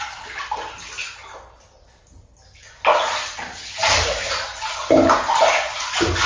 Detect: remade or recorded recorded